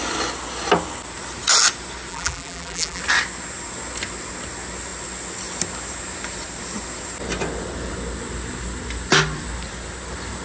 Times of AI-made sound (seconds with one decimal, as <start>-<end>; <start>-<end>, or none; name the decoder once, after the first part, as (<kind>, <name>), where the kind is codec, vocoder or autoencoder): 2.1-3.0 (vocoder, BigVGAN v2)